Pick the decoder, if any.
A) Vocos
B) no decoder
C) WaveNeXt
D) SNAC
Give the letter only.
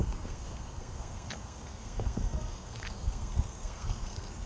D